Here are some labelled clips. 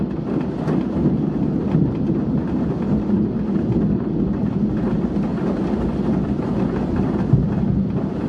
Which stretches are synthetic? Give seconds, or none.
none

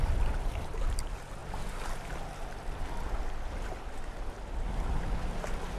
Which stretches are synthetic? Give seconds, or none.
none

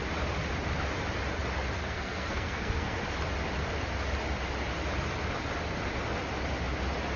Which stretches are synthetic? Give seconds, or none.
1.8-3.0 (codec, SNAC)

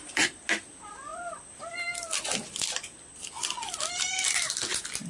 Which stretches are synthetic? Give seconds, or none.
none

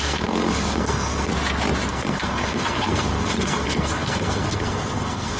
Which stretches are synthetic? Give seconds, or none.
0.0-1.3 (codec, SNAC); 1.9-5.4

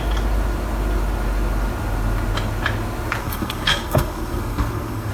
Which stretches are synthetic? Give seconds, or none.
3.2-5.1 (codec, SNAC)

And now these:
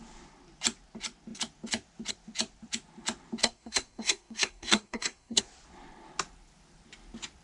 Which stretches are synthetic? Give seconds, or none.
3.4-5.4 (codec, SNAC)

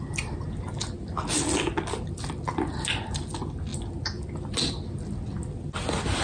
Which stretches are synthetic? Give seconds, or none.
none